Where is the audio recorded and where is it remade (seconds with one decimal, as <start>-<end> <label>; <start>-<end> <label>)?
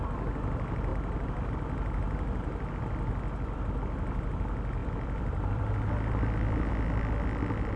0.0-4.8 recorded; 4.8-6.7 remade; 6.7-7.8 recorded